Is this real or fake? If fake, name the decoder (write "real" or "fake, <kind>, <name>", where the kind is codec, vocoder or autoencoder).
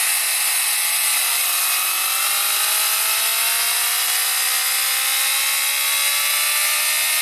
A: real